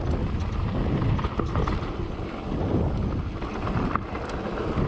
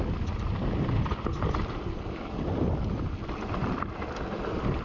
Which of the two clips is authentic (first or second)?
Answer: first